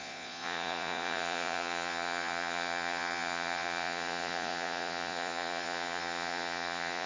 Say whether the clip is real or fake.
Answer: fake